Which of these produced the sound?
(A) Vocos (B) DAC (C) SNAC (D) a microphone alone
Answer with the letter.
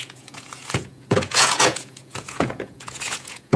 A